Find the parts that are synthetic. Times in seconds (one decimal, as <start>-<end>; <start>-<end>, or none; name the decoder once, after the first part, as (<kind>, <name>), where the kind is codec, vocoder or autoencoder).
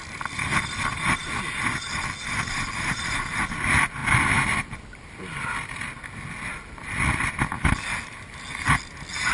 none